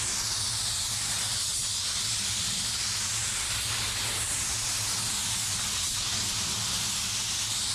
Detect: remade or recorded recorded